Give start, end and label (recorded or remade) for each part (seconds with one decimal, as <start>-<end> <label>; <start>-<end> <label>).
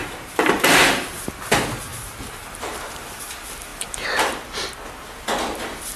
0.0-0.9 remade; 0.9-1.9 recorded; 1.9-3.2 remade; 3.2-3.7 recorded; 3.7-4.4 remade; 4.4-6.0 recorded